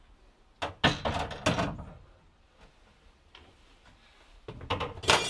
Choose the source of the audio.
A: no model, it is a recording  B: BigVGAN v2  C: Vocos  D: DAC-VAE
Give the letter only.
A